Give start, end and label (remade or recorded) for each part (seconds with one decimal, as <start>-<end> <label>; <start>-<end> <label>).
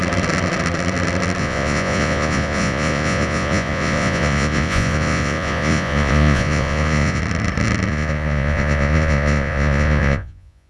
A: 0.0-1.4 recorded; 1.4-7.2 remade; 7.2-7.9 recorded; 7.9-10.7 remade